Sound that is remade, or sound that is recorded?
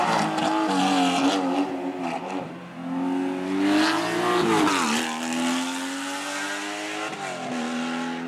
recorded